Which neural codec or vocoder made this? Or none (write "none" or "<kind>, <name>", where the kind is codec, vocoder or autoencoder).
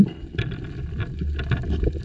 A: none